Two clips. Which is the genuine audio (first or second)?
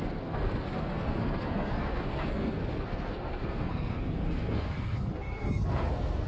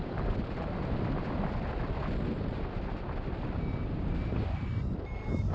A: second